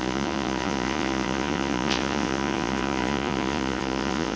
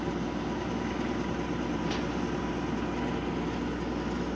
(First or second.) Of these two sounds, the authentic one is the second